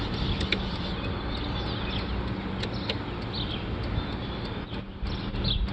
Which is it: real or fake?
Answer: real